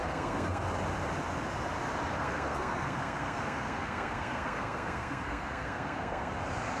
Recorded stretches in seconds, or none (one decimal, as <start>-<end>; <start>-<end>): 0.6-2.2; 6.3-6.8